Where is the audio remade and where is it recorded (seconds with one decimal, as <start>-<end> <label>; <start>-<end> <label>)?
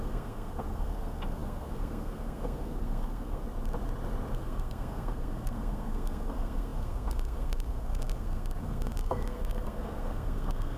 0.0-3.4 remade; 3.4-4.3 recorded; 4.3-10.8 remade